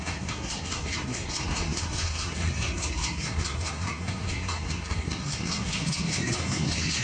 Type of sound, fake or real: fake